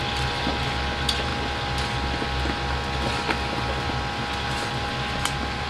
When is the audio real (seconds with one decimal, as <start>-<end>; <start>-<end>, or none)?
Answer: 0.0-5.7